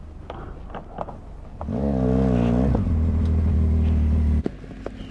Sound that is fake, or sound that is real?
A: real